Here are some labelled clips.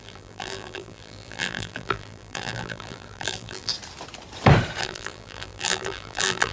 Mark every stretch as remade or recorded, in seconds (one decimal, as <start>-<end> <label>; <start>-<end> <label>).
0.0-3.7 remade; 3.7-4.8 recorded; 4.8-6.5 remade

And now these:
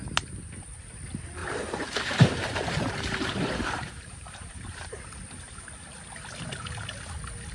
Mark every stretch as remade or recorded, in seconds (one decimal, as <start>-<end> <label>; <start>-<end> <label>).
0.0-1.4 recorded; 1.4-5.0 remade; 5.0-7.5 recorded

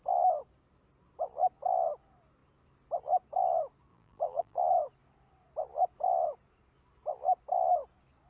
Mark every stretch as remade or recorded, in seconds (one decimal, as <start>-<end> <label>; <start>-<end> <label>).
0.0-3.9 recorded; 3.9-4.6 remade; 4.6-8.3 recorded

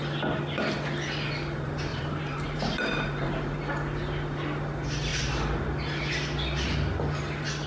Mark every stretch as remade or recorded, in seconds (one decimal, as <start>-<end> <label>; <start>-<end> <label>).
0.0-1.9 recorded; 1.9-3.6 remade; 3.6-7.7 recorded

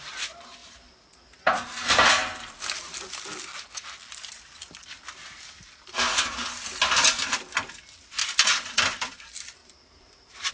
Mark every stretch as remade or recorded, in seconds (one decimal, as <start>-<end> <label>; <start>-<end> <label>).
0.0-0.6 recorded; 0.6-3.4 remade; 3.4-8.2 recorded; 8.2-9.2 remade; 9.2-9.6 recorded; 9.6-10.5 remade

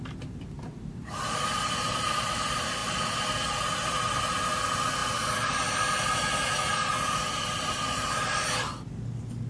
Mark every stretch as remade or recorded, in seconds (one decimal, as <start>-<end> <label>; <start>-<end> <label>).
0.0-9.5 recorded

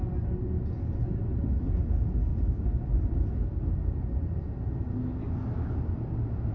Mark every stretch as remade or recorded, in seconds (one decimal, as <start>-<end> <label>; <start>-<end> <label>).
0.0-2.3 recorded; 2.3-4.7 remade; 4.7-6.5 recorded

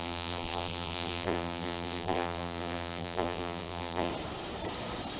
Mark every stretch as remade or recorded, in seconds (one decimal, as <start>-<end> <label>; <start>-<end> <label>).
0.0-4.1 remade; 4.1-5.2 recorded